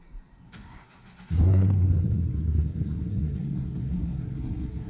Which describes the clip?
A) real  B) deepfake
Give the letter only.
B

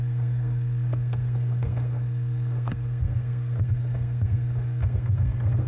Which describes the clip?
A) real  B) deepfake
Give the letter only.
B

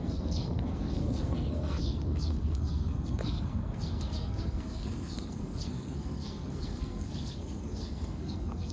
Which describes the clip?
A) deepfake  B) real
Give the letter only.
A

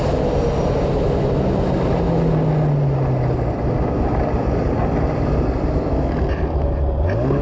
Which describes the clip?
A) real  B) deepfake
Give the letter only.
A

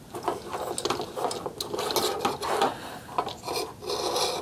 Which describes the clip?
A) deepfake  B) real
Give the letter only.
B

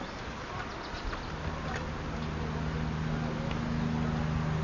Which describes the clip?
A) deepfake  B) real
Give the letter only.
B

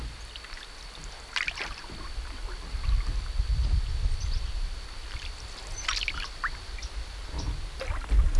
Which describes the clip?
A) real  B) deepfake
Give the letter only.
A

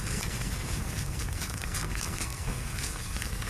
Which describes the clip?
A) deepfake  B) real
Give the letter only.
A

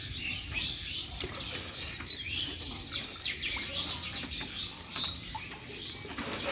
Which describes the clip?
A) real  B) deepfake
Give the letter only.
A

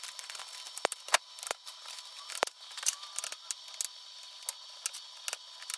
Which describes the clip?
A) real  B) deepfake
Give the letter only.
A